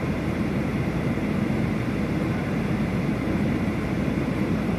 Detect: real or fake fake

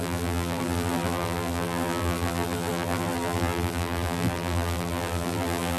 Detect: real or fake fake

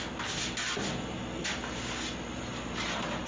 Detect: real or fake real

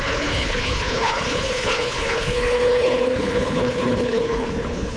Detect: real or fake fake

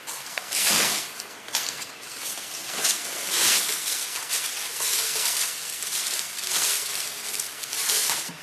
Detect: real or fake fake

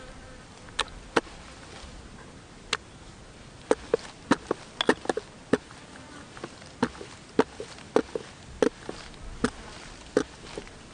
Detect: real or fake real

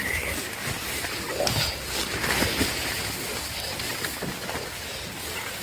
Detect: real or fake real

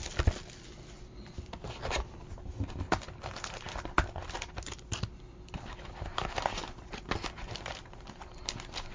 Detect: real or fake real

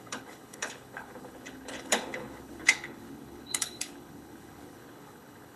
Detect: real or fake fake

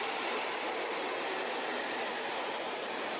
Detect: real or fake fake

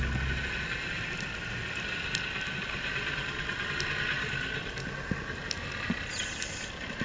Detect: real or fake real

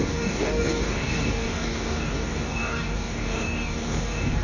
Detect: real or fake fake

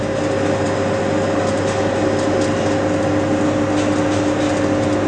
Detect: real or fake real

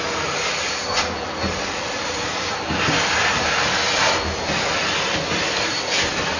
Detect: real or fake real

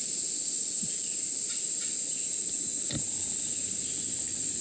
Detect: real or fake real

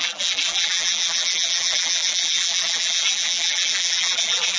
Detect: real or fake fake